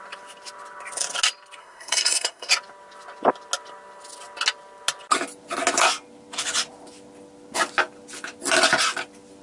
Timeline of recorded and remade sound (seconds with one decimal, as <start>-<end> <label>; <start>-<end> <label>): 0.0-1.6 recorded; 1.6-2.5 remade; 2.5-9.4 recorded